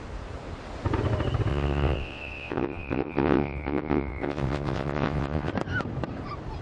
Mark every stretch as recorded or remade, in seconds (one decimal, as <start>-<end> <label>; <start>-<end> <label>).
0.0-1.5 recorded; 1.5-5.5 remade; 5.5-6.6 recorded